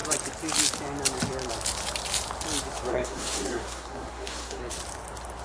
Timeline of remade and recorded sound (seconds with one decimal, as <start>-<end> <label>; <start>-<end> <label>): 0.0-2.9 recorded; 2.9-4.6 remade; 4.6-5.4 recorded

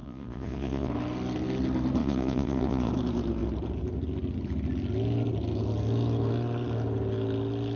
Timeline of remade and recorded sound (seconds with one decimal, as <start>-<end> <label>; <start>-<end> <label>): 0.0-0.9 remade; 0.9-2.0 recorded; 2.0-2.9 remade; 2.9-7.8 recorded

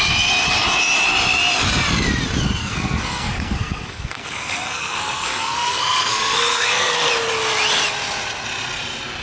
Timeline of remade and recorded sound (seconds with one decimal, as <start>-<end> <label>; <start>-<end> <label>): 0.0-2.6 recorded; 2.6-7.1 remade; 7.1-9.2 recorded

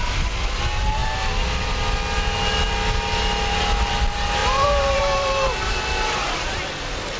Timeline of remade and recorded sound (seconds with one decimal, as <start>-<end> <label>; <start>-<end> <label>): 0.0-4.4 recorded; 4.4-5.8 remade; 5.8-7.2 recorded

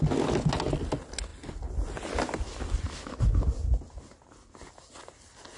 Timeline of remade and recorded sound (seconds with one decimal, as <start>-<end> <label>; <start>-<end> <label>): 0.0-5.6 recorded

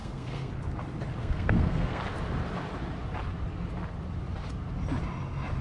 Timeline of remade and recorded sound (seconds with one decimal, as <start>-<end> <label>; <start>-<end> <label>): 0.0-0.5 remade; 0.5-1.2 recorded; 1.2-2.0 remade; 2.0-5.6 recorded

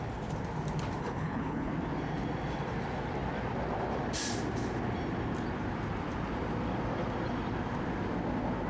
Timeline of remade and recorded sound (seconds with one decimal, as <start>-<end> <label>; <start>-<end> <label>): 0.0-1.0 recorded; 1.0-1.7 remade; 1.7-8.7 recorded

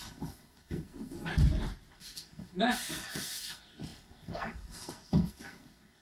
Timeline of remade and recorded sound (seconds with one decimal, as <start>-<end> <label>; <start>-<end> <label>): 0.0-1.3 remade; 1.3-1.9 recorded; 1.9-6.0 remade